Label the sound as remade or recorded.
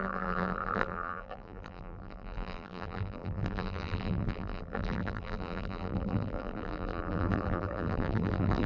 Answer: remade